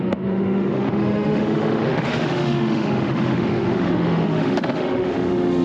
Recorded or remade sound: remade